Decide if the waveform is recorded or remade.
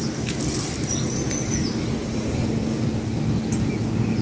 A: recorded